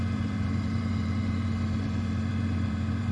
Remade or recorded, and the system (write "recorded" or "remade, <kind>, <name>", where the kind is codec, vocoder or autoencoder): remade, vocoder, BigVGAN v2